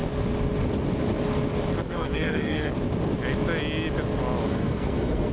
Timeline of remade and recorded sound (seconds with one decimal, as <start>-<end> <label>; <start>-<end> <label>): 0.0-1.8 recorded; 1.8-2.7 remade; 2.7-4.5 recorded; 4.5-5.3 remade